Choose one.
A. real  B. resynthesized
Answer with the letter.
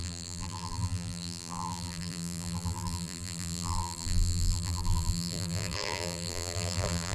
B